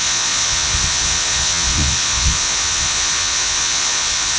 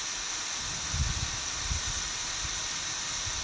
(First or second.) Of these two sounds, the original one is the second